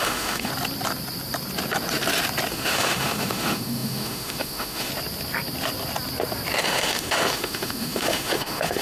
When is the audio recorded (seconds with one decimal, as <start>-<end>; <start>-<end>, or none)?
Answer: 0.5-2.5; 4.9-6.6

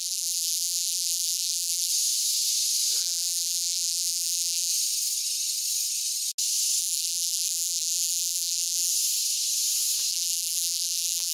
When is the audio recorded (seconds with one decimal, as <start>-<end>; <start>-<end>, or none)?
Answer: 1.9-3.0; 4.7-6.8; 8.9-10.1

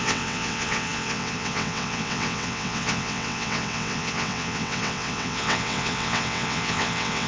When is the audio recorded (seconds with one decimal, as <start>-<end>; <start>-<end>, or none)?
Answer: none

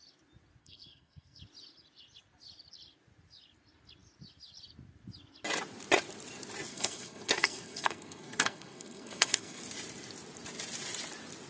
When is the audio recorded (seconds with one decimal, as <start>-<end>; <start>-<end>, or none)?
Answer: 0.0-0.6; 1.4-6.7; 9.6-11.5

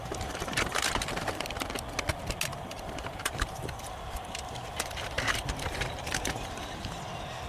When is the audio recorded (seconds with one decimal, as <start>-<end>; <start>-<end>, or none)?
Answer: 1.0-2.5; 7.0-7.5

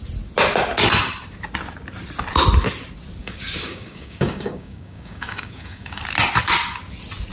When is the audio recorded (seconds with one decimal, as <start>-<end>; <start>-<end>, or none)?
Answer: 0.0-3.2; 6.0-7.3

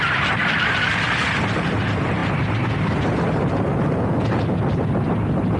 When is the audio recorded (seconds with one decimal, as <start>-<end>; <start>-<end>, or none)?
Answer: 0.0-5.6